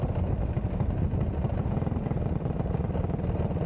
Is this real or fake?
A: real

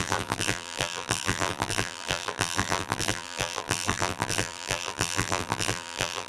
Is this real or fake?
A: fake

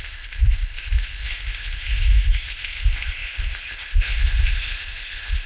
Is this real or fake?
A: fake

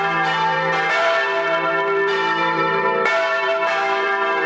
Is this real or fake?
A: fake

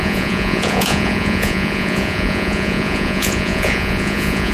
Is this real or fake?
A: fake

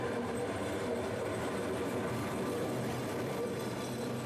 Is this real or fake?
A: real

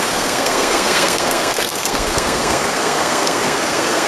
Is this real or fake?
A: fake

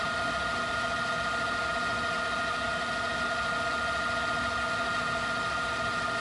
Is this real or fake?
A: real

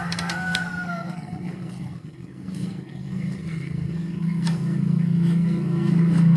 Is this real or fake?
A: fake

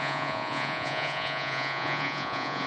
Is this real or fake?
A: fake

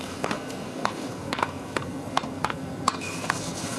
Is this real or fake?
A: fake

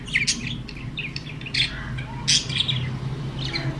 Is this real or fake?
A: real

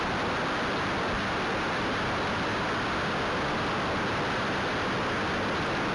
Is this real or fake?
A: real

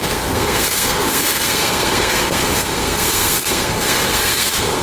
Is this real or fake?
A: fake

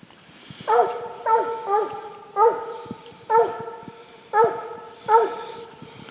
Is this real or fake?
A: real